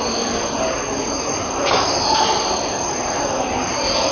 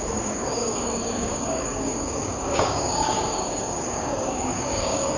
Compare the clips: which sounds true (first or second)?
first